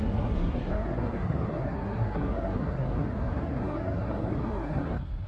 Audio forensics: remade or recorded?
remade